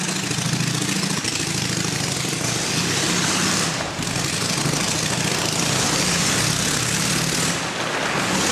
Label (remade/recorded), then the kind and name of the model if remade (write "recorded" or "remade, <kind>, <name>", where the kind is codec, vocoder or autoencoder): recorded